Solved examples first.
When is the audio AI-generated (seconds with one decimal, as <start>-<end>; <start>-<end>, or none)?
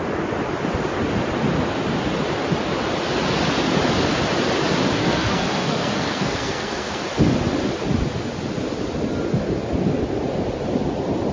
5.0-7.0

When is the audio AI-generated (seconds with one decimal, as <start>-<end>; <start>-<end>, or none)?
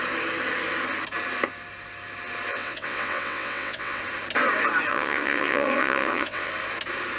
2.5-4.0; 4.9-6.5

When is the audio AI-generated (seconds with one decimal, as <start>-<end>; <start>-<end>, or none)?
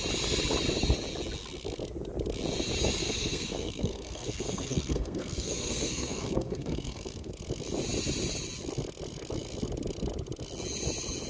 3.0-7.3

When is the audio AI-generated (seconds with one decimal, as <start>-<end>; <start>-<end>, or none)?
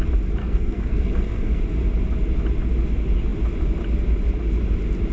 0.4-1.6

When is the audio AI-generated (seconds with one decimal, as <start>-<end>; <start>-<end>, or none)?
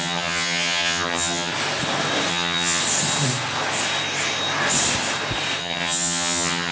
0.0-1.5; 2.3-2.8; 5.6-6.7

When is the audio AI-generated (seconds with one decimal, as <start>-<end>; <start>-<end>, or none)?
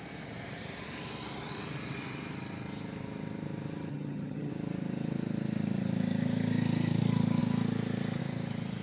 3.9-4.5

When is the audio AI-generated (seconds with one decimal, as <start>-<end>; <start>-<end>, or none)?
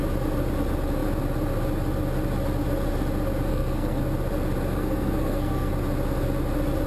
3.5-4.0; 4.7-5.7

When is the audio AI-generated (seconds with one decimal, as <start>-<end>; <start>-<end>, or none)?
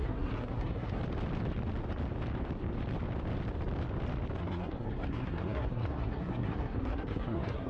0.0-1.0; 4.4-7.7